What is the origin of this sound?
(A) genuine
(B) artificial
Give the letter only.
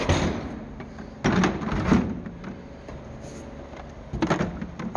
A